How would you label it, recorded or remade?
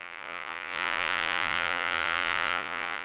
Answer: remade